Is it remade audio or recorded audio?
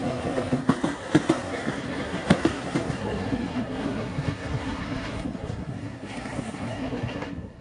remade